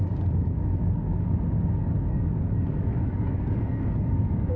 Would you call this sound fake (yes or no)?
yes